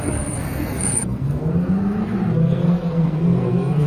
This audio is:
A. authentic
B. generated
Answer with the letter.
B